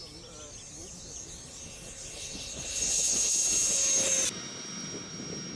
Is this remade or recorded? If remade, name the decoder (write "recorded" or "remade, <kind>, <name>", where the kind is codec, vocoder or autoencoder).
recorded